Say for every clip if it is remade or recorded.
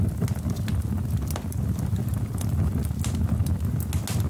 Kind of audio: recorded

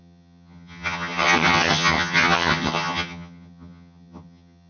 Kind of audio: remade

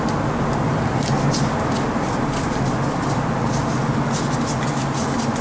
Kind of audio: recorded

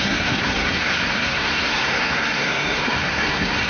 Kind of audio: remade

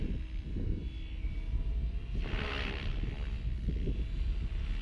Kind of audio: recorded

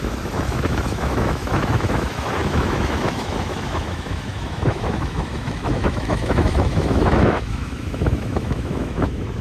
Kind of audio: remade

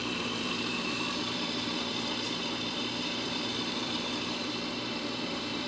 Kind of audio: remade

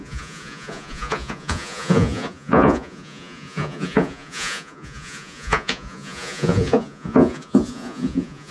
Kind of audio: remade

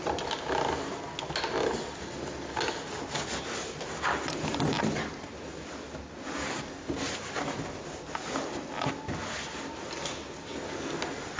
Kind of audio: recorded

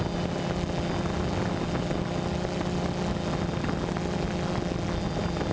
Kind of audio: recorded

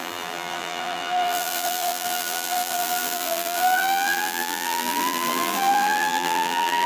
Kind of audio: remade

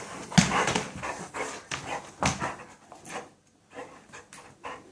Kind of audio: recorded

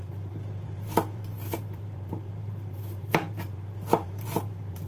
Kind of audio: remade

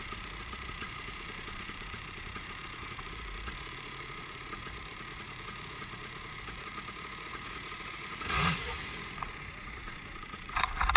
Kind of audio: remade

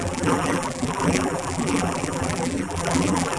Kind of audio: remade